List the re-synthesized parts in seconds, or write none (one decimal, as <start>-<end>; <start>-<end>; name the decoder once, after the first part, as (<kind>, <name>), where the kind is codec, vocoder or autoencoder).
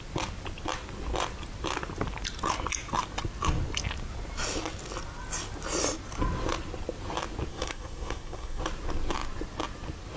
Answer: 7.5-8.6 (codec, SNAC)